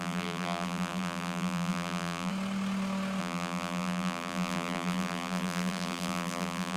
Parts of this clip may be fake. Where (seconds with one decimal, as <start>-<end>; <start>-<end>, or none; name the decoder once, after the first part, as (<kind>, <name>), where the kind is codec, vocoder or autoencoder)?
0.0-2.3 (vocoder, BigVGAN v2); 3.2-6.8